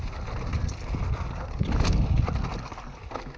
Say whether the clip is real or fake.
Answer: real